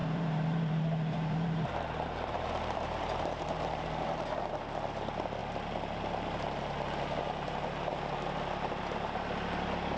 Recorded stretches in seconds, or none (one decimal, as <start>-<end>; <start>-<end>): 4.6-10.0

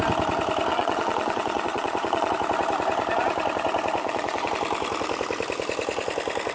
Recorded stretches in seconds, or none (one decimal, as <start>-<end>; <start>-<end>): 0.0-0.7; 2.3-4.0; 4.5-6.5